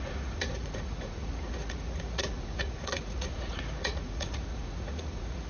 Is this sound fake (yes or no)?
yes